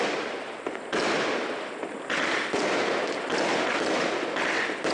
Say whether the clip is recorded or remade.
recorded